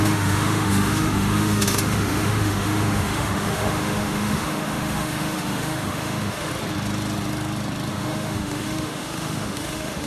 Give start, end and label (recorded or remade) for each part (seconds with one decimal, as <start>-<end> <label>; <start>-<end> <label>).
0.0-6.5 remade; 6.5-7.9 recorded; 7.9-10.1 remade